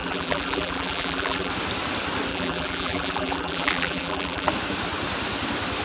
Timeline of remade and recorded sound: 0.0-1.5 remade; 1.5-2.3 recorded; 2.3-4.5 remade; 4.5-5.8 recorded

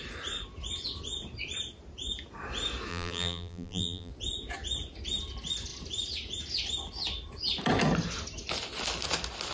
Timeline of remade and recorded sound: 0.0-2.9 recorded; 2.9-4.1 remade; 4.1-9.5 recorded

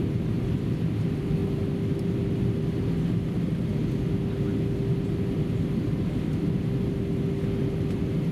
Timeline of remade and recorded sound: 0.0-0.6 remade; 0.6-8.3 recorded

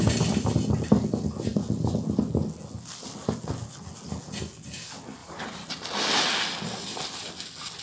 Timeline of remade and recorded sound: 0.0-5.2 recorded; 5.2-6.2 remade; 6.2-7.8 recorded

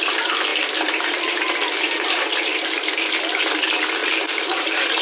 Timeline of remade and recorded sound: 0.0-4.0 recorded; 4.0-5.0 remade